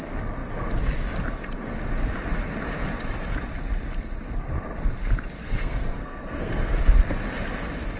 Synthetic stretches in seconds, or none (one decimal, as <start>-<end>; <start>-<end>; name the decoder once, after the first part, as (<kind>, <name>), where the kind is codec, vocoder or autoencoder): 5.4-6.8 (codec, SNAC)